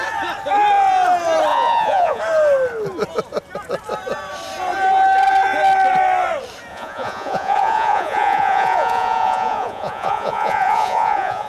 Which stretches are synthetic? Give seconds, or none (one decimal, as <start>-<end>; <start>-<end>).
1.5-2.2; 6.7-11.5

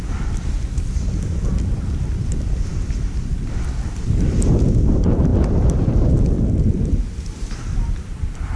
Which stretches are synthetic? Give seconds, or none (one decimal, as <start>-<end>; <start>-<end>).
5.3-6.2

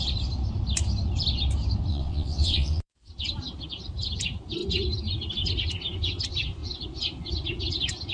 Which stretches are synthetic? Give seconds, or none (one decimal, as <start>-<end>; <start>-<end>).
1.9-3.1